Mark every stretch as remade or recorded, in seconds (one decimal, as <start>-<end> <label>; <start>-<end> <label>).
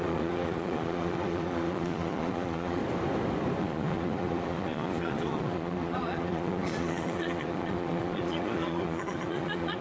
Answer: 0.0-2.8 remade; 2.8-3.6 recorded; 3.6-9.8 remade